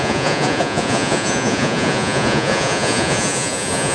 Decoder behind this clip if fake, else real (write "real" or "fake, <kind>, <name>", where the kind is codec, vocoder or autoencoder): fake, vocoder, Vocos